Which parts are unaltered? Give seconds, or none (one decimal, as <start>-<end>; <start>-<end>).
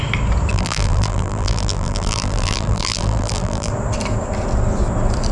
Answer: 0.0-0.5; 3.7-5.3